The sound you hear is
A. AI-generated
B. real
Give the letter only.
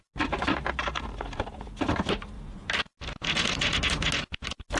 B